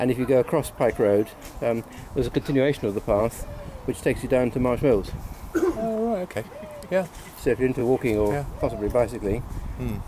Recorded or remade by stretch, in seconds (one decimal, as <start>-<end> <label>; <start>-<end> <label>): 0.0-2.0 recorded; 2.0-3.2 remade; 3.2-7.8 recorded; 7.8-8.5 remade; 8.5-10.1 recorded